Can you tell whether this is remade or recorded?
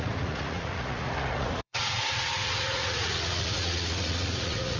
remade